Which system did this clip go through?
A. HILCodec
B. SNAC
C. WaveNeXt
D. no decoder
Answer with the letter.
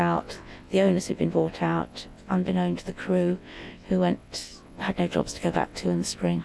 C